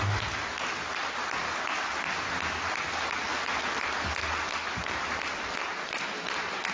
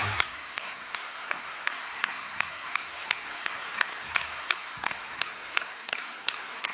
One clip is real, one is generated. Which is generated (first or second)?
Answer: second